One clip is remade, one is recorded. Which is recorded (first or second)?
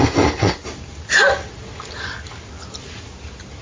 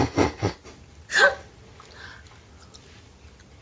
second